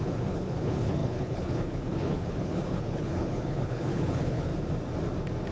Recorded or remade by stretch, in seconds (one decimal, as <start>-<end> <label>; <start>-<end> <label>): 0.0-4.5 remade; 4.5-5.5 recorded